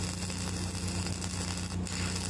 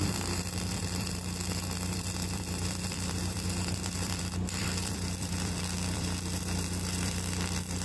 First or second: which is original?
first